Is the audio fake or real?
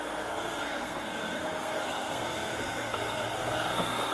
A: fake